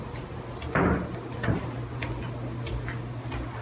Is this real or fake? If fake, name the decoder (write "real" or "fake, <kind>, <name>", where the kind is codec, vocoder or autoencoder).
real